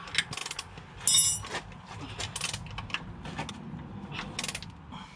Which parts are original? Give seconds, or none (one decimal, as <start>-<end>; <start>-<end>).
0.0-5.2